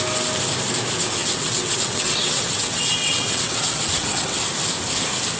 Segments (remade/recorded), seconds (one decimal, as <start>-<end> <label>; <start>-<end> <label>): 0.0-1.2 recorded; 1.2-4.4 remade; 4.4-5.4 recorded